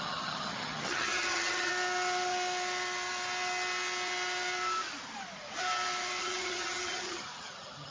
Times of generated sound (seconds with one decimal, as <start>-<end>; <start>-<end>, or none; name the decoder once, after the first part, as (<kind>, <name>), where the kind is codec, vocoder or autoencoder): 0.0-1.7 (vocoder, HiFi-GAN); 6.2-7.9